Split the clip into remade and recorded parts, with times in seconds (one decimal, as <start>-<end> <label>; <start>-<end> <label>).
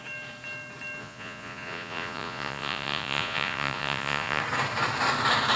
0.0-1.0 recorded; 1.0-4.4 remade; 4.4-5.6 recorded